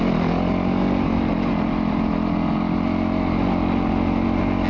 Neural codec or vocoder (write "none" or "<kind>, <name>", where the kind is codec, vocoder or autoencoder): none